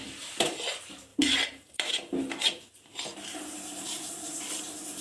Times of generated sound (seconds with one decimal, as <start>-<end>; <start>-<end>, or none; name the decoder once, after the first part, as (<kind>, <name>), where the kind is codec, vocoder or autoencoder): 1.1-4.1 (vocoder, BigVGAN v2)